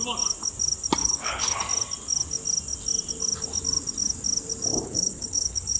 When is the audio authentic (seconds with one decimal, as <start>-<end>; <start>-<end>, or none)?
0.0-1.0; 1.6-4.7